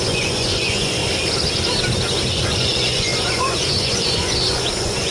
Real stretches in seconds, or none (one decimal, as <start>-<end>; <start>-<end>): 1.0-2.3